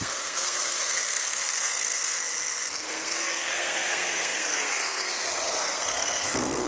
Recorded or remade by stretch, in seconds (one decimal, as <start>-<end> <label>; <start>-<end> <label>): 0.0-2.2 remade; 2.2-2.8 recorded; 2.8-6.7 remade

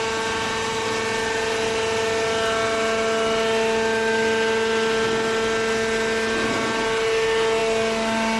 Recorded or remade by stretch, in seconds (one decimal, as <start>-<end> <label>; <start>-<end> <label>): 0.0-8.4 recorded